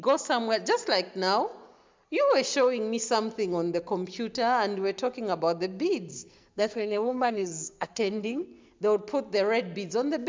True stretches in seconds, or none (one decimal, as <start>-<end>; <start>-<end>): 0.0-6.1; 8.7-10.3